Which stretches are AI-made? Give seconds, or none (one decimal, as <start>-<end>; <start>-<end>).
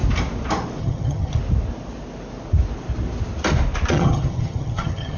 0.8-1.4; 3.9-5.2